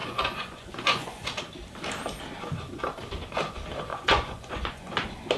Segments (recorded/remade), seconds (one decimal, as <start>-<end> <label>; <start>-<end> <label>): 0.0-1.4 remade; 1.4-3.9 recorded; 3.9-4.9 remade; 4.9-5.4 recorded